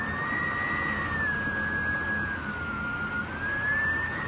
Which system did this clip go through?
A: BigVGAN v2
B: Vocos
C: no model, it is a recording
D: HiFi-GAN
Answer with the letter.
C